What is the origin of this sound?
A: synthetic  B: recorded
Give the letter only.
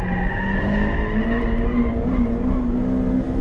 B